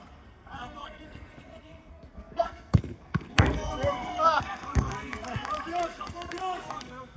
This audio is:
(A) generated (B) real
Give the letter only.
A